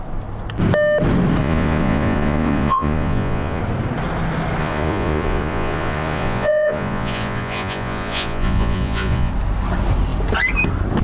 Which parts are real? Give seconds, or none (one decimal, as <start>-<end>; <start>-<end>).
0.0-1.4; 3.6-4.6; 9.3-11.0